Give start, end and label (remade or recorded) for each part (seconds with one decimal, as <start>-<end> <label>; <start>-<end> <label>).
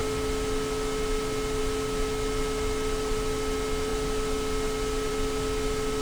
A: 0.0-6.0 recorded